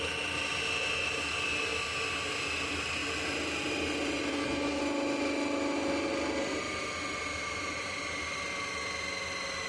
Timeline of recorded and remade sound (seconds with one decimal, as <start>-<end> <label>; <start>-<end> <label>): 0.0-4.3 recorded; 4.3-4.8 remade; 4.8-9.7 recorded